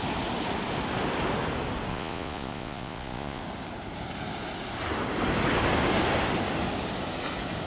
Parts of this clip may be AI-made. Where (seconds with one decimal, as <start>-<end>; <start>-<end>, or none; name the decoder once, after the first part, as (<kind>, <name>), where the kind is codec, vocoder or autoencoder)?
1.9-3.4 (vocoder, Vocos)